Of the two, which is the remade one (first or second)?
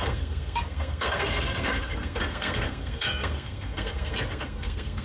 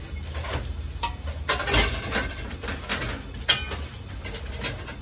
first